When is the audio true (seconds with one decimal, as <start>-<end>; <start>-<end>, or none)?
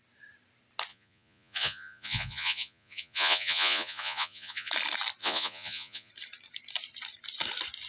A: 0.0-0.9; 4.7-5.2; 6.1-7.9